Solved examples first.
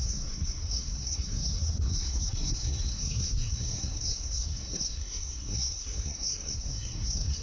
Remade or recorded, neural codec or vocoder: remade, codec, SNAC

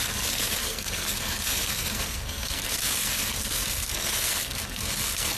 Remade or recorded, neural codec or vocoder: remade, codec, SNAC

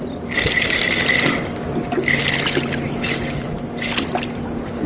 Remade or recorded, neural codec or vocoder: recorded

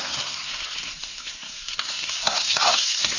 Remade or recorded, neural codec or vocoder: remade, codec, SNAC